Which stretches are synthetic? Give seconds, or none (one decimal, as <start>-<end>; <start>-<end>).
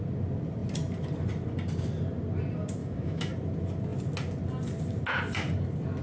2.8-3.3